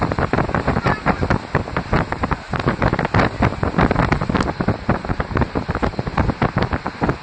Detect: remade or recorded recorded